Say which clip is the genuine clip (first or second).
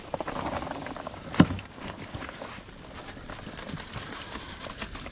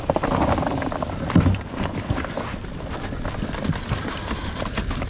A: second